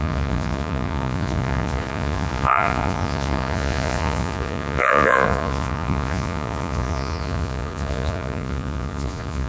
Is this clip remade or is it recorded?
remade